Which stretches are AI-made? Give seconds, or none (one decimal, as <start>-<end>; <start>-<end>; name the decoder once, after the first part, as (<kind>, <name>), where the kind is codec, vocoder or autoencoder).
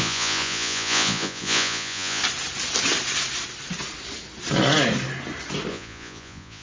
0.0-2.2 (vocoder, Vocos); 5.7-6.6